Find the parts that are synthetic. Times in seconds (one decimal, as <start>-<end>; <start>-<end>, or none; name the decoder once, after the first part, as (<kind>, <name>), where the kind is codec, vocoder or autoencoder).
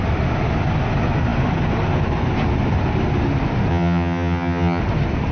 3.7-4.8 (vocoder, HiFi-GAN)